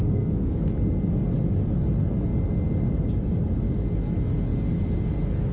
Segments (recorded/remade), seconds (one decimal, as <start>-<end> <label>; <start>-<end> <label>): 0.0-0.7 remade; 0.7-5.5 recorded